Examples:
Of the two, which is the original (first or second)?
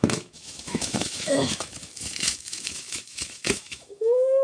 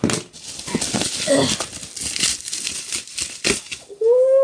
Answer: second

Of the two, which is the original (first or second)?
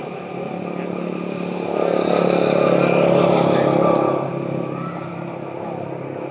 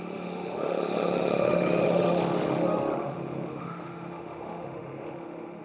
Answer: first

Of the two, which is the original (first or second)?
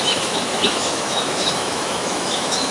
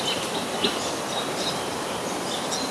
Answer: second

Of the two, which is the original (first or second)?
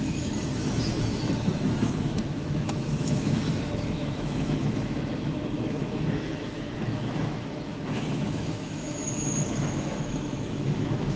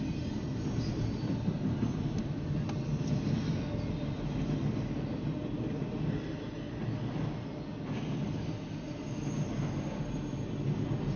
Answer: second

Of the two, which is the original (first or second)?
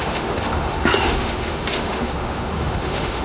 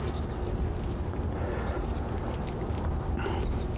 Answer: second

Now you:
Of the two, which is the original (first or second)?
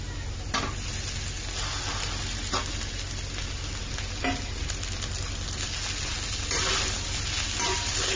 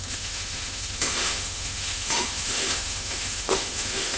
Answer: first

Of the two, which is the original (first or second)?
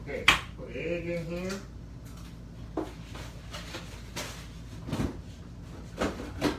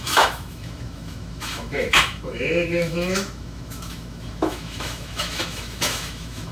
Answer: first